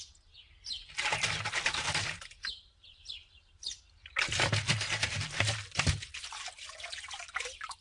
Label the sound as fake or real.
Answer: fake